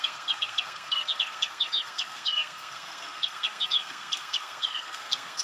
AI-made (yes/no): yes